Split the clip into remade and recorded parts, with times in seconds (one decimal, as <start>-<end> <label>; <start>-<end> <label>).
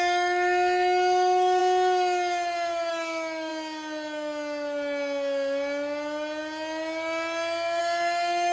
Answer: 0.0-1.6 remade; 1.6-2.9 recorded; 2.9-3.5 remade; 3.5-7.8 recorded; 7.8-8.5 remade